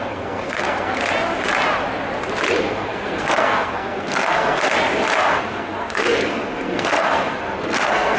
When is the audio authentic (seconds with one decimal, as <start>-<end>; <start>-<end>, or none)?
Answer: 1.0-2.5; 4.7-5.3